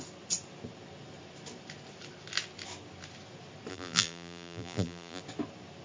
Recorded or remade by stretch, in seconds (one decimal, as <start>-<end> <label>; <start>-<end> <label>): 0.0-3.7 recorded; 3.7-5.2 remade; 5.2-5.8 recorded